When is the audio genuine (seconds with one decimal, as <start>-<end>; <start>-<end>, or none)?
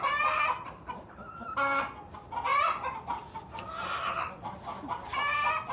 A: 0.0-5.7